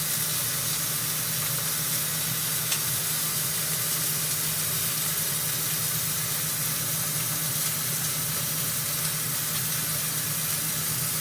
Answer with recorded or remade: recorded